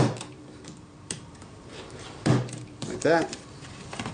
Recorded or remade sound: remade